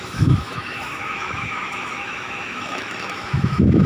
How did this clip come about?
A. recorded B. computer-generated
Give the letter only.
B